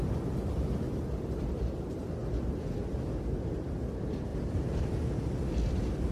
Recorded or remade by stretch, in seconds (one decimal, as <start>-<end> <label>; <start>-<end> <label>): 0.0-6.1 recorded